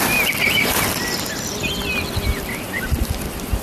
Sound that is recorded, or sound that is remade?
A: remade